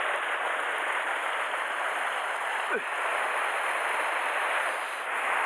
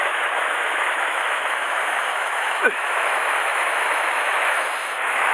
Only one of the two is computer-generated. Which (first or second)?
second